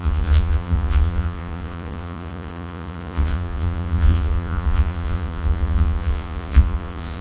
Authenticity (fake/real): fake